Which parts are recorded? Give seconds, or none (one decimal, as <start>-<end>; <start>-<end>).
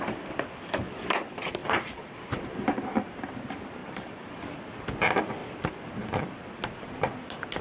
0.0-1.6; 3.3-3.8; 4.4-7.6